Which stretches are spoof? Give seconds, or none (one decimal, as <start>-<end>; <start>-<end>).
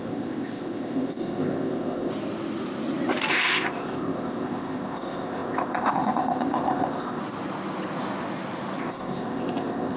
0.0-2.1; 3.3-7.2; 8.8-10.0